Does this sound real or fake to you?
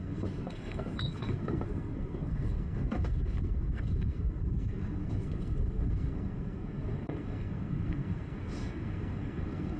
fake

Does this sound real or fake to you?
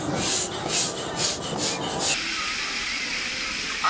real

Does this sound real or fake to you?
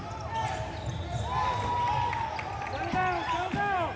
real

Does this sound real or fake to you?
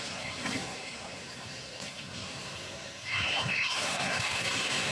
fake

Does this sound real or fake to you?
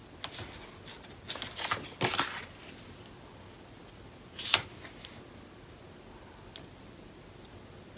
real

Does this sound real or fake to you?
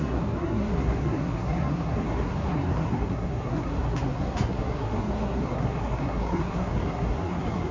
fake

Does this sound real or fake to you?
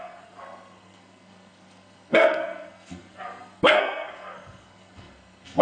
fake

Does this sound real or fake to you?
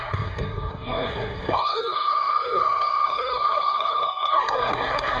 fake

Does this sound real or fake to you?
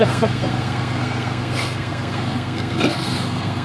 fake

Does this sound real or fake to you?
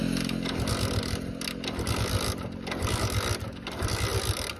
real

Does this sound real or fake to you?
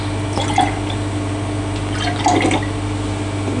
real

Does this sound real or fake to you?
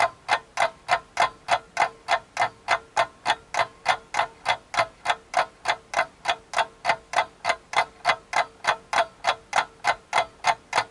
real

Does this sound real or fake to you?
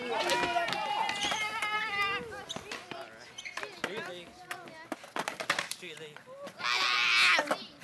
real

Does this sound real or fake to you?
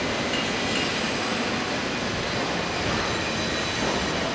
real